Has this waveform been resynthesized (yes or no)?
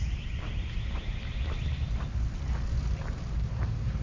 no